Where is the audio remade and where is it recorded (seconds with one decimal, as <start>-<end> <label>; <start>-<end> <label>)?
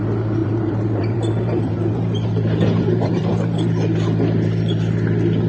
0.0-0.4 recorded; 0.4-3.7 remade; 3.7-5.5 recorded